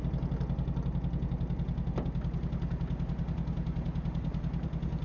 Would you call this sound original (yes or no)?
yes